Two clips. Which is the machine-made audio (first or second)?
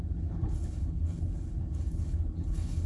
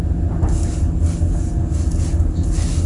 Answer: first